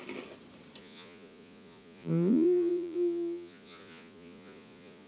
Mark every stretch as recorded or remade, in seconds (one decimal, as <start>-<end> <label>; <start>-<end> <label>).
0.0-0.8 recorded; 0.8-5.1 remade

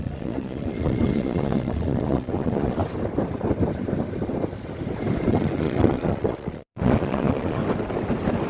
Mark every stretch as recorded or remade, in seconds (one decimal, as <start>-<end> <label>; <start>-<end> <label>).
0.0-2.8 remade; 2.8-5.3 recorded; 5.3-7.6 remade; 7.6-8.5 recorded

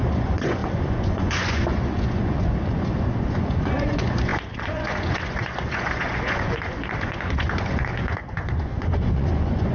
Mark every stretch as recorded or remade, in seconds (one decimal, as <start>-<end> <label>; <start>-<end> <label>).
0.0-9.7 remade

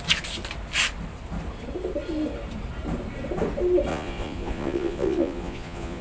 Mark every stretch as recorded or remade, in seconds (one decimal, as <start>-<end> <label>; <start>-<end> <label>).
0.0-3.9 recorded; 3.9-6.0 remade

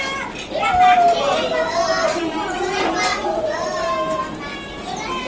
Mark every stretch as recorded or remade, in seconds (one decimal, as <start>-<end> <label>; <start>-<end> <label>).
0.0-2.1 recorded; 2.1-2.7 remade; 2.7-3.1 recorded; 3.1-3.7 remade; 3.7-5.3 recorded

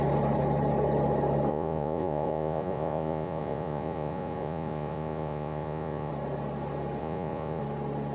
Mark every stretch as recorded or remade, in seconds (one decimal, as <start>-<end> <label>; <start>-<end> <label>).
0.0-1.5 recorded; 1.5-6.1 remade; 6.1-7.0 recorded; 7.0-7.6 remade; 7.6-8.1 recorded

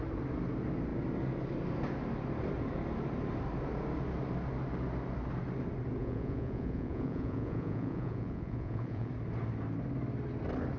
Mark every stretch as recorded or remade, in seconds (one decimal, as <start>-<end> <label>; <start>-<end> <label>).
0.0-6.0 recorded; 6.0-9.1 remade; 9.1-10.8 recorded